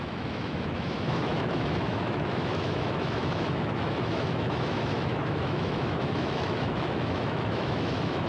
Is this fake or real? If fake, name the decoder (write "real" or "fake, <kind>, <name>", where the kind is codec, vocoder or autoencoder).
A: fake, autoencoder, DAC-VAE